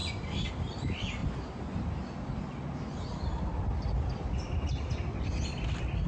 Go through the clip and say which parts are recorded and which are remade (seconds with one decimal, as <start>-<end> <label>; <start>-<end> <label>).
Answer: 0.0-6.1 recorded